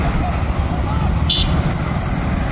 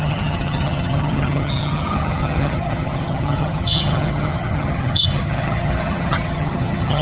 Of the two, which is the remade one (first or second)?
second